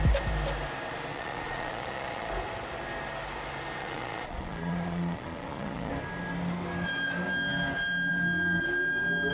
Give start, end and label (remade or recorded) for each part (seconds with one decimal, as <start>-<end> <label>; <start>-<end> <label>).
0.0-1.1 recorded; 1.1-2.3 remade; 2.3-3.8 recorded; 3.8-5.9 remade; 5.9-9.3 recorded